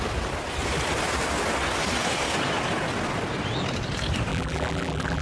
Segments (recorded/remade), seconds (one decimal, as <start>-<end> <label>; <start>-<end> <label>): 0.0-4.3 recorded; 4.3-5.2 remade